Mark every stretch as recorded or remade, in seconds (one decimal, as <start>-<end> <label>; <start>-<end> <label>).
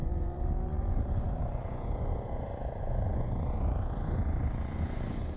0.0-5.4 remade